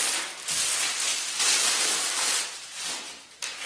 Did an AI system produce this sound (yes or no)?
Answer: no